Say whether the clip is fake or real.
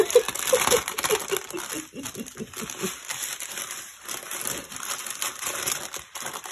real